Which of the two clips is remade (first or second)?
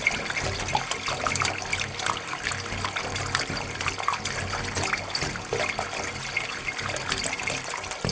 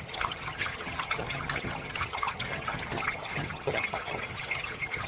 second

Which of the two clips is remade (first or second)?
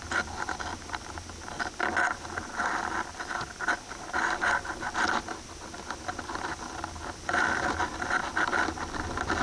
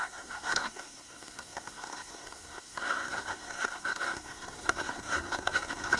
second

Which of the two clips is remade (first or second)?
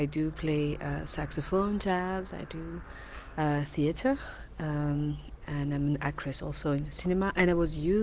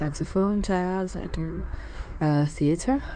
second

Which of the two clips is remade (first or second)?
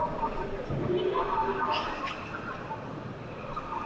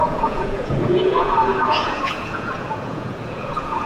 second